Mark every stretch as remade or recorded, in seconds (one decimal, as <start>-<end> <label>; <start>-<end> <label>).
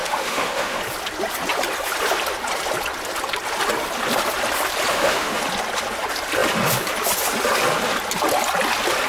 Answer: 0.0-0.8 remade; 0.8-4.9 recorded; 4.9-5.4 remade; 5.4-9.1 recorded